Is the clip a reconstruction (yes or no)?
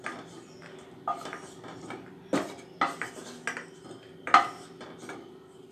no